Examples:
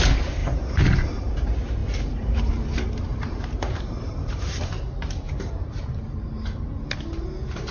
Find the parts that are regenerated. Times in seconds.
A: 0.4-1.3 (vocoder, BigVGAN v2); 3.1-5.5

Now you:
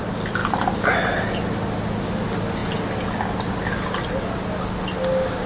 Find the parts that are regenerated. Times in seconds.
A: none

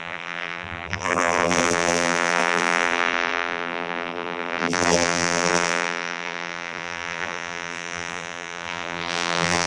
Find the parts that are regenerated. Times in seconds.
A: 0.0-9.7 (vocoder, BigVGAN v2)

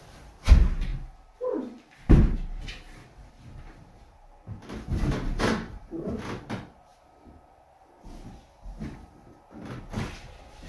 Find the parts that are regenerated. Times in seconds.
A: none

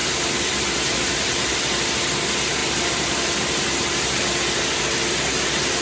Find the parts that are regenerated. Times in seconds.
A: 0.0-1.4 (vocoder, BigVGAN v2); 2.6-4.4

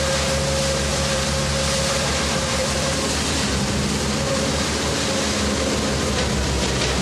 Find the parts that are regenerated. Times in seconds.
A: 0.9-4.8 (vocoder, BigVGAN v2)